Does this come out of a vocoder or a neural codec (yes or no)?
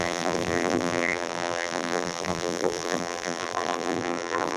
yes